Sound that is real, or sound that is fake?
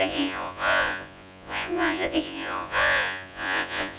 fake